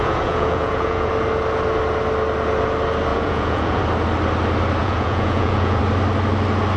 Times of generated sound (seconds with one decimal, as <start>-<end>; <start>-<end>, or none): 0.0-1.1; 3.1-3.8; 4.8-5.8